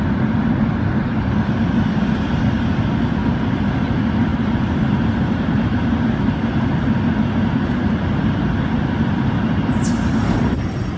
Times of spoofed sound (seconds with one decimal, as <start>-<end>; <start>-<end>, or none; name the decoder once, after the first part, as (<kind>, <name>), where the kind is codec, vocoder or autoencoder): 4.3-5.6 (vocoder, BigVGAN v2)

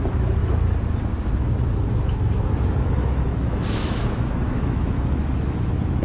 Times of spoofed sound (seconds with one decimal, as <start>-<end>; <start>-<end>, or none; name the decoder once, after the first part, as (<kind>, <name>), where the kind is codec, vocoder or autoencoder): 0.0-0.4 (autoencoder, DAC-VAE); 2.8-6.0

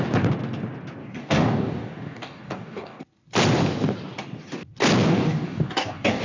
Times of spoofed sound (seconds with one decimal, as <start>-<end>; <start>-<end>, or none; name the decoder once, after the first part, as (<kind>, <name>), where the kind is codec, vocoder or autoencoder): 1.0-3.0 (codec, DAC); 5.2-6.2

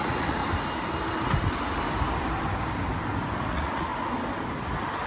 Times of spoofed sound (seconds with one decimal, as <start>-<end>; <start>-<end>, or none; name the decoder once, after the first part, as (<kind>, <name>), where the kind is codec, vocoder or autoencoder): 0.0-0.4 (vocoder, Vocos); 3.5-3.9

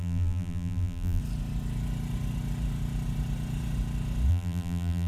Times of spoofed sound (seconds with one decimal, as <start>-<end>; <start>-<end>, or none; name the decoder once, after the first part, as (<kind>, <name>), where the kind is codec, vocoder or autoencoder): 0.0-1.2 (vocoder, BigVGAN v2); 4.3-5.1

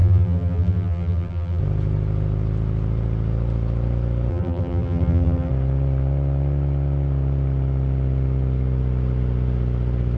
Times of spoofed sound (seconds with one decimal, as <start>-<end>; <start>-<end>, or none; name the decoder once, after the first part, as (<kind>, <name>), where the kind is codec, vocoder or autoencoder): 0.0-1.6 (vocoder, BigVGAN v2); 4.3-5.5

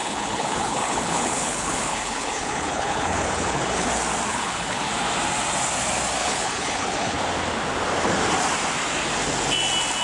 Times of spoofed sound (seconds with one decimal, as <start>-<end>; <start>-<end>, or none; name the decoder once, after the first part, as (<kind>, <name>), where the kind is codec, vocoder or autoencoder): 0.0-3.9 (codec, HILCodec); 4.3-4.9; 6.2-7.2